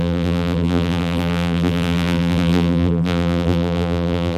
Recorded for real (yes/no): no